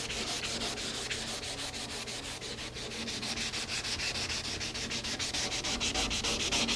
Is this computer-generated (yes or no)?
no